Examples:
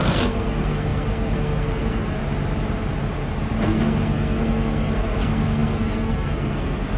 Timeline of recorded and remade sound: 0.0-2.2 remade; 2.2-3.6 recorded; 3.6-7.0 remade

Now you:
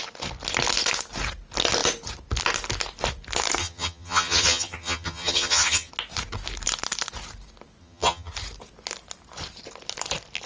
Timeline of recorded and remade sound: 0.0-3.6 recorded; 3.6-5.9 remade; 5.9-7.8 recorded; 7.8-8.3 remade; 8.3-10.5 recorded

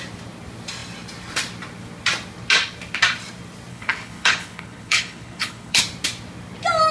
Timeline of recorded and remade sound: 0.0-3.7 recorded; 3.7-5.8 remade; 5.8-6.9 recorded